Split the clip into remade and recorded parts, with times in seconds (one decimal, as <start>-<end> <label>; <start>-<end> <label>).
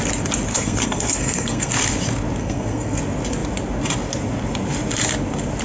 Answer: 0.0-0.5 recorded; 0.5-1.7 remade; 1.7-2.4 recorded; 2.4-3.0 remade; 3.0-5.6 recorded